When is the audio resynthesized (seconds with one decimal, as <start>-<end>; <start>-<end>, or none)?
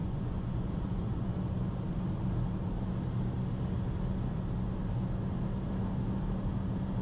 0.0-1.3